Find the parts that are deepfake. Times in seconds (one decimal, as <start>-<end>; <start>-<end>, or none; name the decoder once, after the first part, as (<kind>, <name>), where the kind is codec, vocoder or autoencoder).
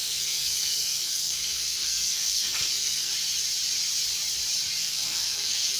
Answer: 0.0-3.1 (codec, SNAC); 4.8-5.8